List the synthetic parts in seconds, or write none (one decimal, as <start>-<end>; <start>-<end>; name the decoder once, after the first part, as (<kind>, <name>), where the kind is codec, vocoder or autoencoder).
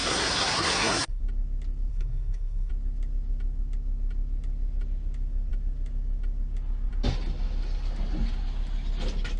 0.0-1.2 (codec, SNAC); 1.9-2.7